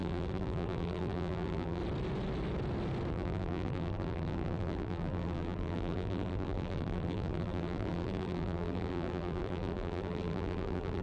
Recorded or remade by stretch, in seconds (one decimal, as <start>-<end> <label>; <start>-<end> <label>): 0.0-1.8 remade; 1.8-3.1 recorded; 3.1-11.0 remade